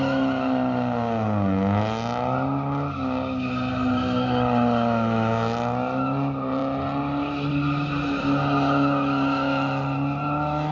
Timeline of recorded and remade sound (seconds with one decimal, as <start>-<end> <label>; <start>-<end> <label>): 0.0-10.7 recorded